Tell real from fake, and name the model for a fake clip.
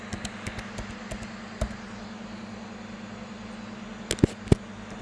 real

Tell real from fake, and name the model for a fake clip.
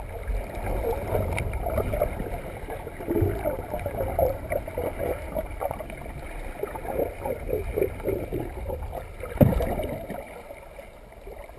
real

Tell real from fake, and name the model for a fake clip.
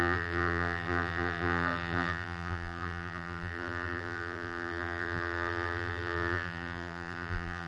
fake, vocoder, BigVGAN v2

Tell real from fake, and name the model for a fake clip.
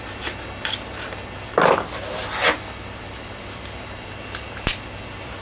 real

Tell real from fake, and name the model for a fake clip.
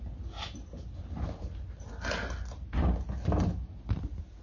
real